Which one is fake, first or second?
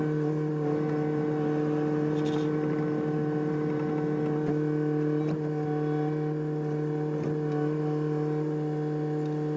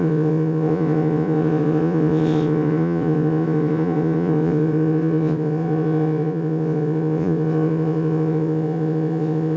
second